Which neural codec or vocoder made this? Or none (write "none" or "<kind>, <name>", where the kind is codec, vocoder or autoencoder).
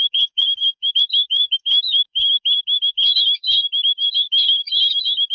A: codec, DAC